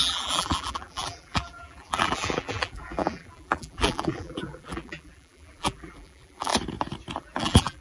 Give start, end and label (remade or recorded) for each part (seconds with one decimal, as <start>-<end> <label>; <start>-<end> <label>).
0.0-6.5 remade; 6.5-7.2 recorded; 7.2-7.8 remade